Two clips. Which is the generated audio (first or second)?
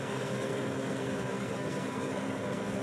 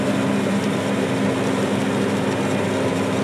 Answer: first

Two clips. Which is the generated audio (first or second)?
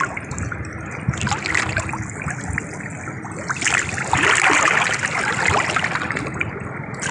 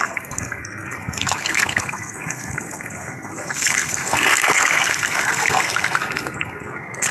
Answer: second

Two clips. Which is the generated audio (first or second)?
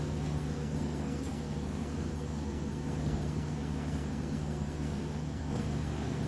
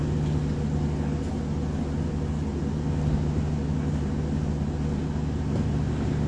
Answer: first